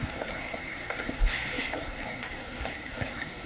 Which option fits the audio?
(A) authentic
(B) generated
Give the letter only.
B